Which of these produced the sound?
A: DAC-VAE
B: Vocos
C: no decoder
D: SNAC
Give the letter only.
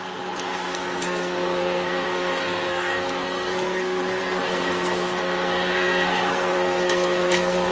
D